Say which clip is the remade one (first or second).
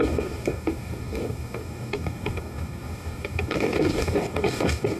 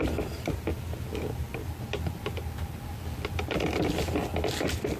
first